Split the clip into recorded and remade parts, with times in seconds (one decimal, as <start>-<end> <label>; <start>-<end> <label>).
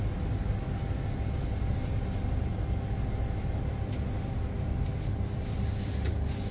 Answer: 0.0-6.5 recorded